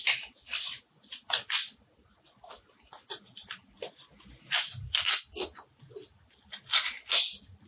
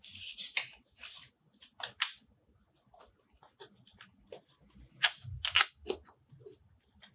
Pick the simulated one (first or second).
first